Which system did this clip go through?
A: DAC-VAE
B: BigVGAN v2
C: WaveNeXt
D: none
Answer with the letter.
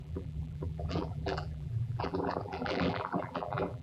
B